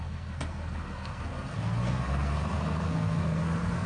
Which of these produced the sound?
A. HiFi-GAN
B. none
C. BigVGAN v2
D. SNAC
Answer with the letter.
D